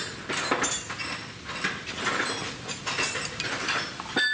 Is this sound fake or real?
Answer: real